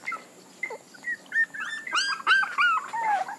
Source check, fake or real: real